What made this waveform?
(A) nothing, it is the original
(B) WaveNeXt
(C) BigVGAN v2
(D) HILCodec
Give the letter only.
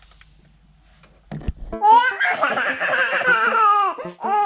A